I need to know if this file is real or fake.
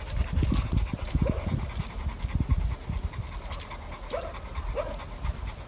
real